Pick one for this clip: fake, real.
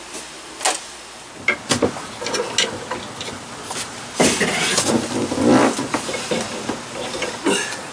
real